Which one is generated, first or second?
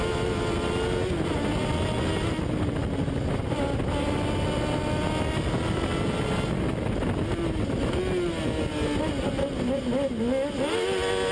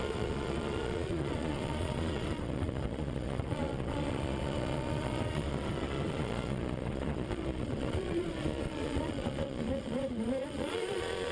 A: second